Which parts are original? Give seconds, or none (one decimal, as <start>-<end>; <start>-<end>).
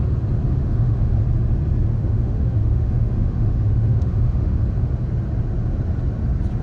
0.0-0.5; 1.2-1.9; 4.6-6.6